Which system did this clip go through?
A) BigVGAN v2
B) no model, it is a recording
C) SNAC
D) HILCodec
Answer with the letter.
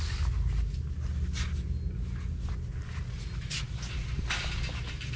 B